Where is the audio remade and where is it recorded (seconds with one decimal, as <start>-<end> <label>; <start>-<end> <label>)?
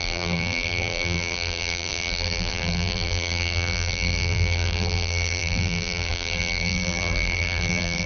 0.0-8.1 remade